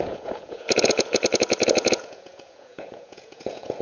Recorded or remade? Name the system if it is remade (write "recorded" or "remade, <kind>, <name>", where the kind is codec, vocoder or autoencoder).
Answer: remade, vocoder, Vocos